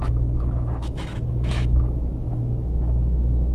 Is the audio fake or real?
fake